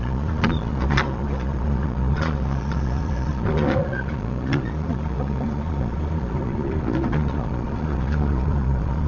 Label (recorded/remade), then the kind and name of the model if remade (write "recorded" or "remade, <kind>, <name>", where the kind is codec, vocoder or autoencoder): remade, vocoder, Vocos